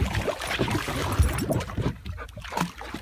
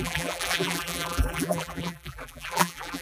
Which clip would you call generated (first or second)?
second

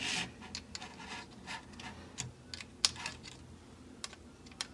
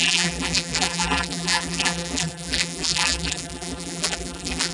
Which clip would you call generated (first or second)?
second